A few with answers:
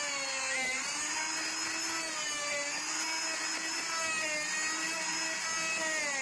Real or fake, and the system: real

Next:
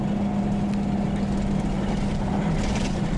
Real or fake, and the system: real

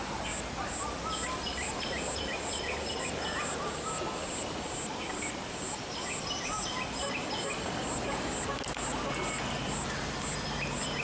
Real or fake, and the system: real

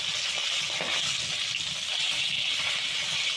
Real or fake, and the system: real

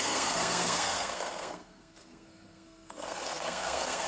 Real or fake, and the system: fake, codec, SNAC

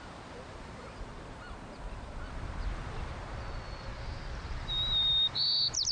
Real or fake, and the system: real